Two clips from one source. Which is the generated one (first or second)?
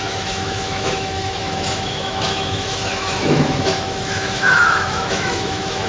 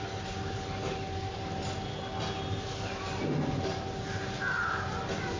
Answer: first